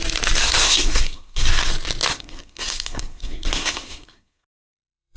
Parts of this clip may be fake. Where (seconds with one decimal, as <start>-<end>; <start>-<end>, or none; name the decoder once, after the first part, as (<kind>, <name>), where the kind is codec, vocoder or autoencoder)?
0.4-1.7 (codec, SNAC); 2.1-5.2